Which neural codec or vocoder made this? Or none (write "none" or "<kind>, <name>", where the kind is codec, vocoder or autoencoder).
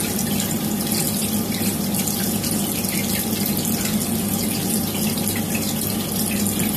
none